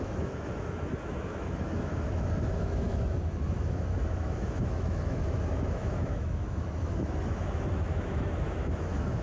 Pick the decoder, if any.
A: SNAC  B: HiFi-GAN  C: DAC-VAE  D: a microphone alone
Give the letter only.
C